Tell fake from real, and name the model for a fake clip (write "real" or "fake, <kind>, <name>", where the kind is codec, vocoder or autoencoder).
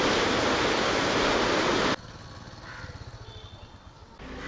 real